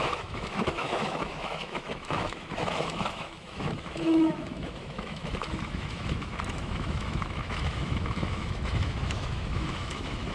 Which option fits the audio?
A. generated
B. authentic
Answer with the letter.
A